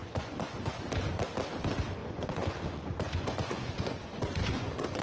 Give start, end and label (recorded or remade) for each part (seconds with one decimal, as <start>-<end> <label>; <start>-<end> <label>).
0.0-0.7 remade; 0.7-2.0 recorded; 2.0-5.0 remade